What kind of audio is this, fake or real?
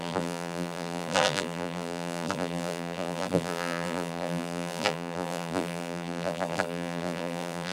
fake